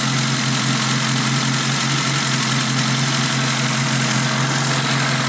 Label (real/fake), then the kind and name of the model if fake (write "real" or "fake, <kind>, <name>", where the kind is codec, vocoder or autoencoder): real